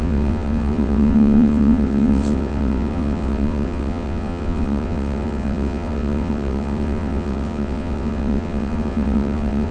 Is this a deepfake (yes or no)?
yes